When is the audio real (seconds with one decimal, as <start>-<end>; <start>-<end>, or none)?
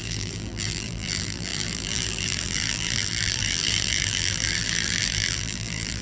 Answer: none